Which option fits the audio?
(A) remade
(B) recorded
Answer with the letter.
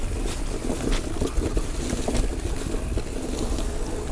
B